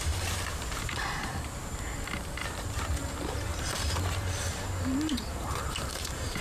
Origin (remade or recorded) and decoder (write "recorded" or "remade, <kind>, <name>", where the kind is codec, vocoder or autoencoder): remade, vocoder, BigVGAN v2